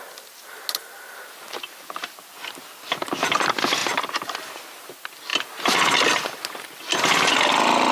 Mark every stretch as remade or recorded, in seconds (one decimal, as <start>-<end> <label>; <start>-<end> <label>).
0.0-3.8 recorded; 3.8-4.5 remade; 4.5-7.9 recorded